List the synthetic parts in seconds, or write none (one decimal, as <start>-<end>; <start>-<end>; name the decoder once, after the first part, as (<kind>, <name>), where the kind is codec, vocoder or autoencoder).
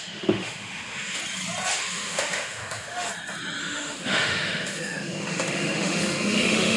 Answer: 0.0-1.2 (autoencoder, DAC-VAE); 1.8-3.1; 3.6-6.8